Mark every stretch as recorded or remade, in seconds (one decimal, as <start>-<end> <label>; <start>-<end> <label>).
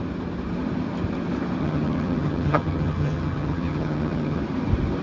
0.0-1.6 recorded; 1.6-4.4 remade; 4.4-5.0 recorded